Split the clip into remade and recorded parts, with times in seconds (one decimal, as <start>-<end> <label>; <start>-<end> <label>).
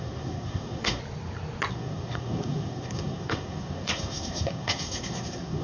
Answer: 0.0-1.0 remade; 1.0-1.7 recorded; 1.7-5.6 remade